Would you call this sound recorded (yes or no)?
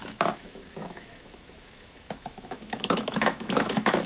no